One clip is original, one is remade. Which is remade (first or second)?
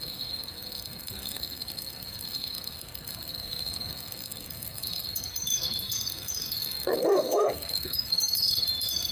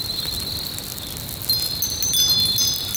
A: first